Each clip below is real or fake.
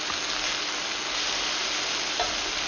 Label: real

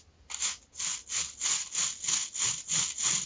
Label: real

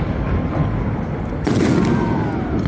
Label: real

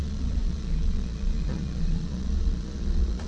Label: fake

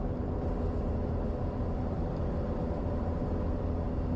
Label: real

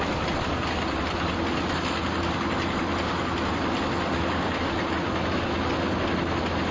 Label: real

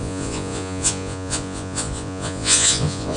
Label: fake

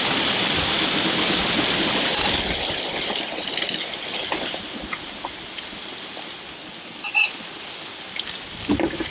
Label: real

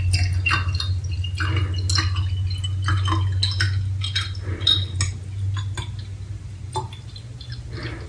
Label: real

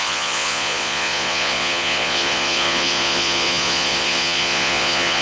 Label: fake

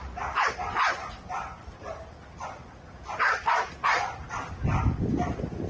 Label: real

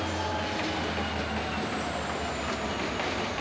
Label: real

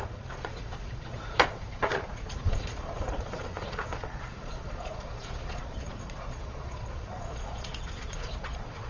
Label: fake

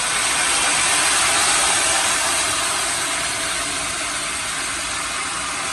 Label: real